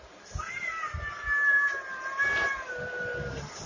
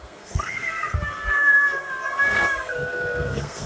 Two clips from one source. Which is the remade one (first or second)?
second